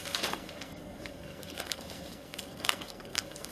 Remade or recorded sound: remade